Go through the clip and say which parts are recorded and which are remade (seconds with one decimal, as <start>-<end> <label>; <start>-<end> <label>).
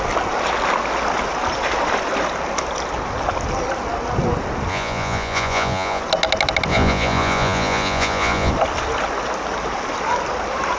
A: 0.0-4.7 recorded; 4.7-6.0 remade; 6.0-6.7 recorded; 6.7-8.5 remade; 8.5-10.8 recorded